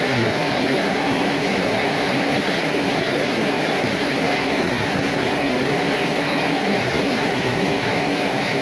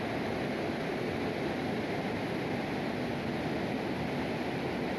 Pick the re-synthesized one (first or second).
first